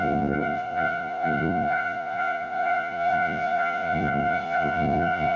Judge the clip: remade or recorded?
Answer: remade